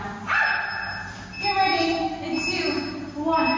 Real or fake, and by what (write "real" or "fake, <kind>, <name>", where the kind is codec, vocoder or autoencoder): real